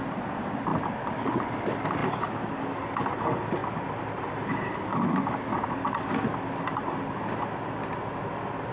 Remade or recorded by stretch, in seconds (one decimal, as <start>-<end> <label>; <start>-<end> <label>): 0.0-8.7 recorded